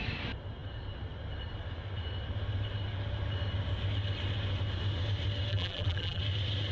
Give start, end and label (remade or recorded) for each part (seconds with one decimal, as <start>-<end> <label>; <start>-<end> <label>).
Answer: 0.0-5.5 recorded; 5.5-6.2 remade; 6.2-6.7 recorded

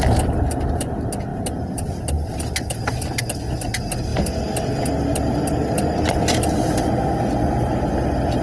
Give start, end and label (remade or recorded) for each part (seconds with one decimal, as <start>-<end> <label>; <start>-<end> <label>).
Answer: 0.0-1.3 recorded; 1.3-3.2 remade; 3.2-8.4 recorded

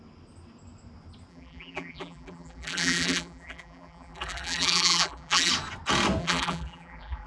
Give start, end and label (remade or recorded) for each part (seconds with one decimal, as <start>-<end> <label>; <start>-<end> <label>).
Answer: 0.0-1.3 recorded; 1.3-5.5 remade; 5.5-6.2 recorded; 6.2-7.3 remade

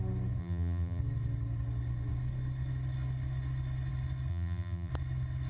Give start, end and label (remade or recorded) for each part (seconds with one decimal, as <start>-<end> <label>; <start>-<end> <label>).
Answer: 0.0-0.4 recorded; 0.4-1.0 remade; 1.0-4.3 recorded; 4.3-4.9 remade; 4.9-5.5 recorded

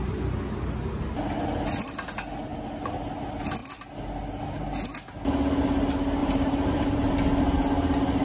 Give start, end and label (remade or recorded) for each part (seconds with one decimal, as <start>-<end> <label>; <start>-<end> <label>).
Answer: 0.0-6.2 recorded; 6.2-7.1 remade; 7.1-8.2 recorded